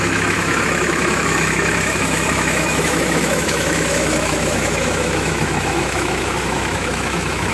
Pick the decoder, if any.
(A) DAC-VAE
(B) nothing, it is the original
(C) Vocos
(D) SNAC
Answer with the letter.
A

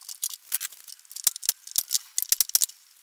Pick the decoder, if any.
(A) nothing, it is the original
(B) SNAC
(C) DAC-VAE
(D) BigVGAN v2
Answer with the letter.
A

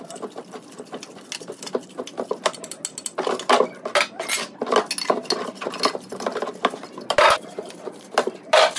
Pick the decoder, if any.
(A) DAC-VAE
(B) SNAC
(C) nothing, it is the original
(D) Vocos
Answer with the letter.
C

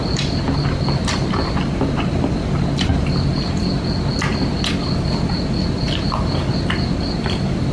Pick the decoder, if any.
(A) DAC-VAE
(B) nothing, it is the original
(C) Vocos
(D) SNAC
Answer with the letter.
B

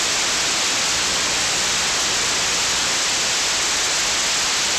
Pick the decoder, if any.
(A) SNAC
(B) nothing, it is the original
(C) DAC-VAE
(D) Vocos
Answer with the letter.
B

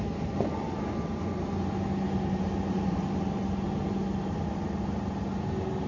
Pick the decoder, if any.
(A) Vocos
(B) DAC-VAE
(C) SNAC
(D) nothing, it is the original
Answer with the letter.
D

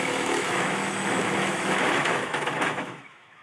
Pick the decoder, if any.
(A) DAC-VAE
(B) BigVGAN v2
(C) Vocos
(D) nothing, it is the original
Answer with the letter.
A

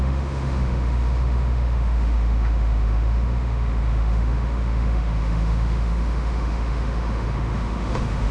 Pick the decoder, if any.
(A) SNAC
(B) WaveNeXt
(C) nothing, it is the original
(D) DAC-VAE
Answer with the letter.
D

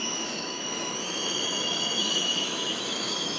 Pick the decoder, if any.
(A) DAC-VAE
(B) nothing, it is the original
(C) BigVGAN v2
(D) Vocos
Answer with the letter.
A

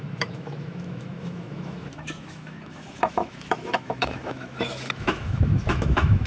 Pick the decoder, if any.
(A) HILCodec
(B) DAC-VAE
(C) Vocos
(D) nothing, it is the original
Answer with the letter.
B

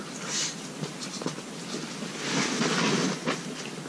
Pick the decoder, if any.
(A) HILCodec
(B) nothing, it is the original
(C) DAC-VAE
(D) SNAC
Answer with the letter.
B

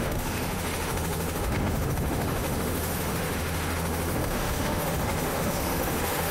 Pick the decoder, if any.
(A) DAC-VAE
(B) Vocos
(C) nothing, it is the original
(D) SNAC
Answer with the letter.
A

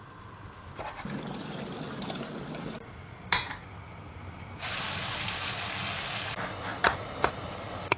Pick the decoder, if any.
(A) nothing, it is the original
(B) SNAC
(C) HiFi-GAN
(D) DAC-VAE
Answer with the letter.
A